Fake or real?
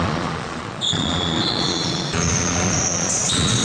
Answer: fake